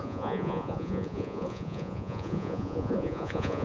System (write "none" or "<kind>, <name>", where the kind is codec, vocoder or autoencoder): vocoder, Vocos